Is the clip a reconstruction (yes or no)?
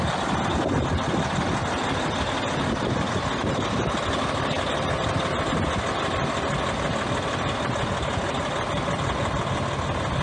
no